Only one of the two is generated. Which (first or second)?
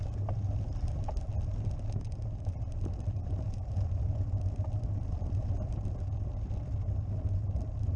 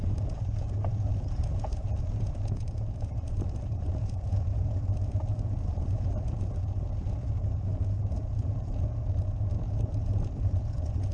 second